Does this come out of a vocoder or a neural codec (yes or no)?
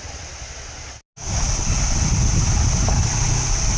no